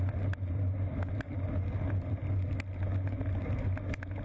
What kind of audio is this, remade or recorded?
recorded